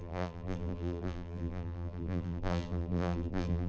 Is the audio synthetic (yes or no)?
yes